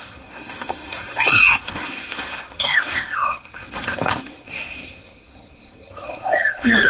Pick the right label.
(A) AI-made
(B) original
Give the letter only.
A